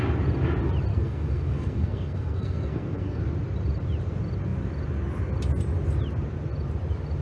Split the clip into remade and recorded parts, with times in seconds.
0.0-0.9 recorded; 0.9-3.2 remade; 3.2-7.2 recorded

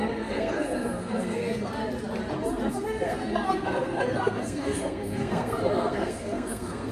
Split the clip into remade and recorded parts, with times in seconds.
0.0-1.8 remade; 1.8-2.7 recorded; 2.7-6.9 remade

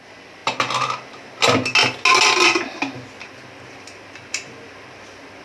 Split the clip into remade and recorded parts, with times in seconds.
0.0-5.4 recorded